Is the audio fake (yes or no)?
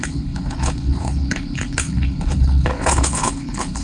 yes